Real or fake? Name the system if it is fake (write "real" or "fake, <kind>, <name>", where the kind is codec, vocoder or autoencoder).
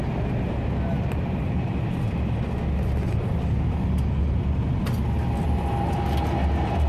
real